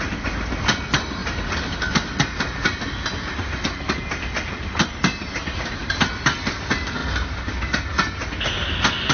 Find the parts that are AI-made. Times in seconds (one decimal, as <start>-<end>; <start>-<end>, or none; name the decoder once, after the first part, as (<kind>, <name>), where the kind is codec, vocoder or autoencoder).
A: none